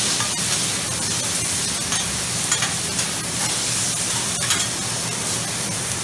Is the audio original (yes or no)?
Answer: yes